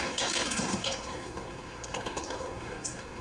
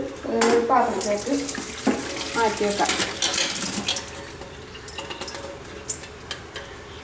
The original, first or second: second